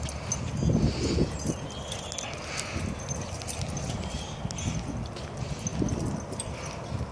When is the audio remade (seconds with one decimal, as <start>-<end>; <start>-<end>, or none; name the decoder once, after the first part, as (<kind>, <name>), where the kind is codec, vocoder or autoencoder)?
none